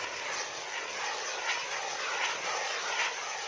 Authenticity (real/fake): real